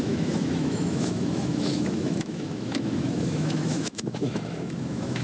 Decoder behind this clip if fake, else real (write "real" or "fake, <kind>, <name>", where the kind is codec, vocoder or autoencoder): fake, autoencoder, DAC-VAE